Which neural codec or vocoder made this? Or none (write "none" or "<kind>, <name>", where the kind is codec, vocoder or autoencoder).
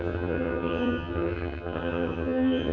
vocoder, HiFi-GAN